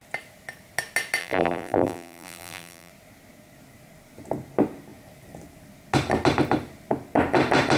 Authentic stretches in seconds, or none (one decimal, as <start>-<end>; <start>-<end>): 0.0-1.2; 2.9-7.8